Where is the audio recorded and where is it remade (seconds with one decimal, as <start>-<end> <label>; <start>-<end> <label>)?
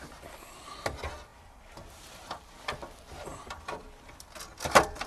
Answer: 0.0-1.3 recorded; 1.3-2.6 remade; 2.6-3.3 recorded; 3.3-3.8 remade; 3.8-5.1 recorded